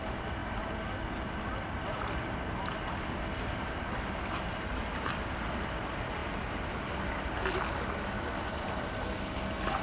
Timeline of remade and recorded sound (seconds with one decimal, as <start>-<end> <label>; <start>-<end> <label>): 0.0-9.8 recorded